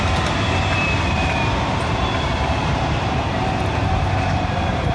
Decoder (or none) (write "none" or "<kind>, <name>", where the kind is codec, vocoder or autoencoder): vocoder, BigVGAN v2